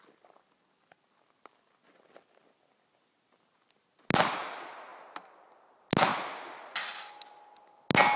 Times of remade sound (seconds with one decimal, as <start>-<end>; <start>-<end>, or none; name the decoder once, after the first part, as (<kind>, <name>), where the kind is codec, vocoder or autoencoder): 6.1-6.8 (vocoder, BigVGAN v2)